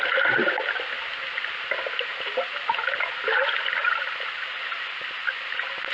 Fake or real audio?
real